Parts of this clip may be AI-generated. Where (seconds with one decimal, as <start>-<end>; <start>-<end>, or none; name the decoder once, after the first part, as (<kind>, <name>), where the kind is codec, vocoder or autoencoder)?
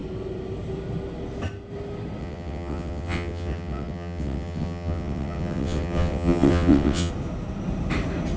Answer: 2.2-7.1 (vocoder, WaveNeXt)